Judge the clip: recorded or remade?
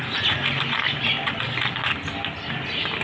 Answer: recorded